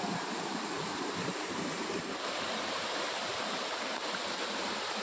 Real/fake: fake